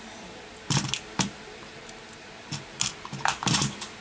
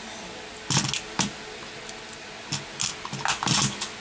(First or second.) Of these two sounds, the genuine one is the second